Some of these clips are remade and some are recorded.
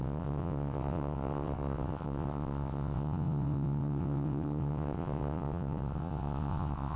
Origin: remade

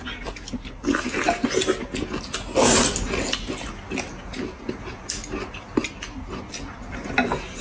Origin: recorded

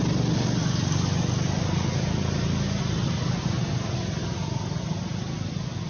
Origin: recorded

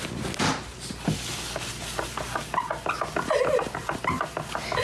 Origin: recorded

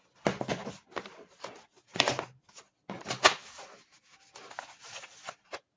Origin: recorded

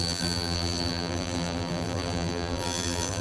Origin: remade